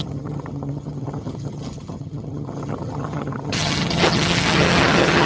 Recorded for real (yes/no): no